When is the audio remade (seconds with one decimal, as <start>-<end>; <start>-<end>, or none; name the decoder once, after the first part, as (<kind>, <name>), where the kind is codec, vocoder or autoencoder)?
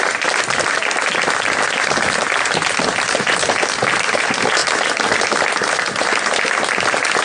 none